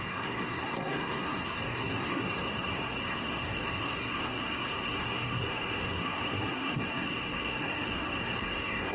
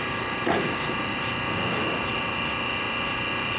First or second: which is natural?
second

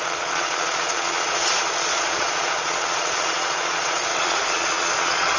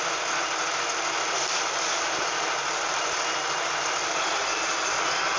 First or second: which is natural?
second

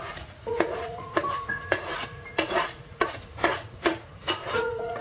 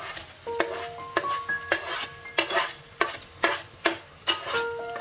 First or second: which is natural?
second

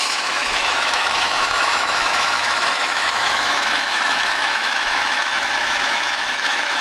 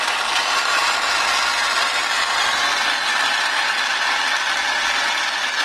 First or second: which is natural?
second